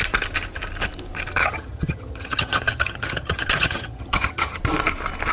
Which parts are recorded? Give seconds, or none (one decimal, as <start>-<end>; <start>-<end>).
0.0-1.4; 4.6-5.3